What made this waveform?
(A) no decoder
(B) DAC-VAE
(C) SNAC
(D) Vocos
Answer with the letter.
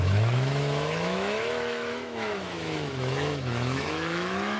B